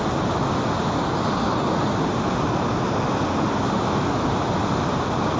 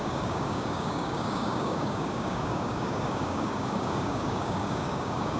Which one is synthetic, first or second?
second